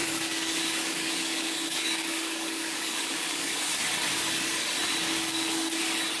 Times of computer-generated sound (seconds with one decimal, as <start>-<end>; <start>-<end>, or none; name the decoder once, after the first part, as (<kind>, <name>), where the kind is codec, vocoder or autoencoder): 0.0-3.7 (codec, DAC); 5.0-5.8